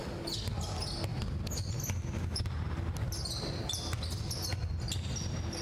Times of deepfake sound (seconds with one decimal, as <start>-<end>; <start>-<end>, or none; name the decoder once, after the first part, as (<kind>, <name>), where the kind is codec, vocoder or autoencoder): none